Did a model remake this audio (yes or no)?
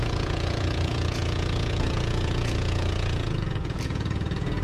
yes